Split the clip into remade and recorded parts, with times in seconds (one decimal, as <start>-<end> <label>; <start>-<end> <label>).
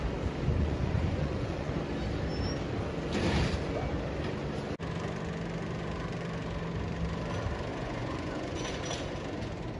0.0-0.5 recorded; 0.5-1.7 remade; 1.7-7.7 recorded; 7.7-8.8 remade; 8.8-9.8 recorded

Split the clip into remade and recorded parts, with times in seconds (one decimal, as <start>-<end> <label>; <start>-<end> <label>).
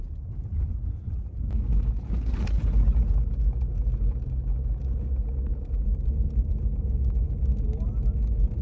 0.0-5.5 recorded; 5.5-7.4 remade; 7.4-8.6 recorded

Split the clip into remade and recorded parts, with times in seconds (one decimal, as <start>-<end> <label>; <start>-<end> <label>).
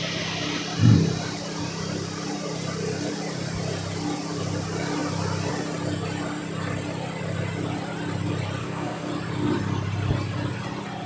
0.0-8.6 recorded; 8.6-9.1 remade; 9.1-11.1 recorded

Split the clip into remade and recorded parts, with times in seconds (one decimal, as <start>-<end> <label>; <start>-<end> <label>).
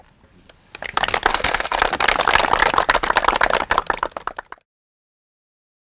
0.0-1.3 recorded; 1.3-1.8 remade; 1.8-5.9 recorded